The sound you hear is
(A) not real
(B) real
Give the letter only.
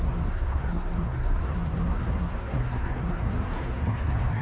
A